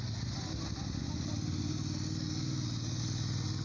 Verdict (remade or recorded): recorded